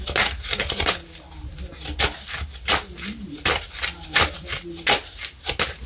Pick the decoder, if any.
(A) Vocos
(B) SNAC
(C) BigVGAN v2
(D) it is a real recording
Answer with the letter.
D